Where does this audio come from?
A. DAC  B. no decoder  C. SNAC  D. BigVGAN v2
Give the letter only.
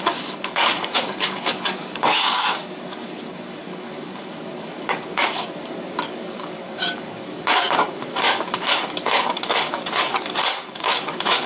A